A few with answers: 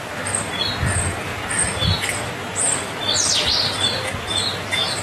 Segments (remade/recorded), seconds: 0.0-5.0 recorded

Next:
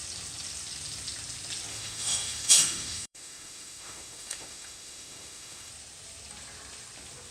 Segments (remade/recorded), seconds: 0.0-1.7 recorded; 1.7-5.7 remade; 5.7-7.3 recorded

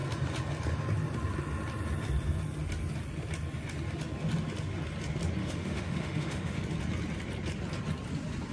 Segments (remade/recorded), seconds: 0.0-5.4 recorded; 5.4-6.6 remade; 6.6-8.5 recorded

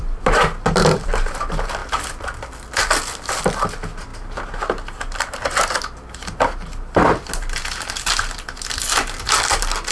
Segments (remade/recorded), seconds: 0.0-9.9 recorded

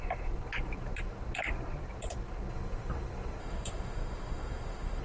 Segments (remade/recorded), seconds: 0.0-3.4 recorded; 3.4-5.0 remade

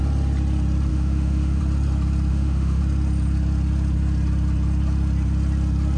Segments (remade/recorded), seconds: 0.0-0.9 recorded; 0.9-1.6 remade; 1.6-2.3 recorded; 2.3-2.8 remade; 2.8-6.0 recorded

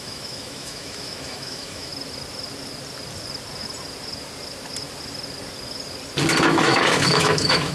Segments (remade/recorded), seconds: 0.0-1.9 remade; 1.9-6.4 recorded; 6.4-7.7 remade